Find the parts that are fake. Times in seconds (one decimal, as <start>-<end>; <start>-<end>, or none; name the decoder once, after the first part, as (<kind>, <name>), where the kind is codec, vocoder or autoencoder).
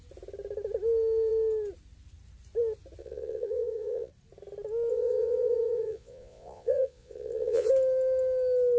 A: 3.0-4.1 (vocoder, Vocos); 4.9-7.7